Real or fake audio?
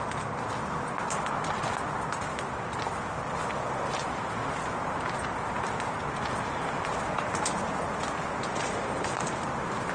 real